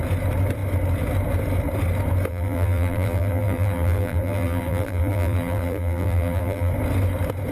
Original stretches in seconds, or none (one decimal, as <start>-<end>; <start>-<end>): 0.0-2.3; 6.7-7.5